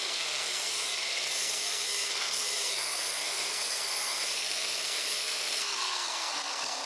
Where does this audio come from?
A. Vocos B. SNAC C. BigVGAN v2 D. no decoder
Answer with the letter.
B